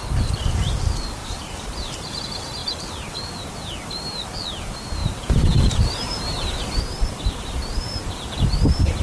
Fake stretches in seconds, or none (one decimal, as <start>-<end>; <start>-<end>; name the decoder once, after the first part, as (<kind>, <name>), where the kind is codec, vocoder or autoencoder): 1.2-2.2 (vocoder, BigVGAN v2); 5.0-8.4